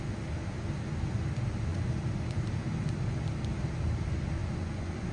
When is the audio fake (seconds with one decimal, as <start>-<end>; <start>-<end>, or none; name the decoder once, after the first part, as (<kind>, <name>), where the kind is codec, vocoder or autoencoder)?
1.7-2.4 (vocoder, Vocos); 4.4-5.1